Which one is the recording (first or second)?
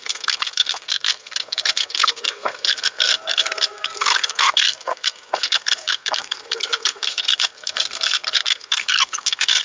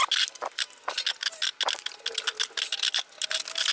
second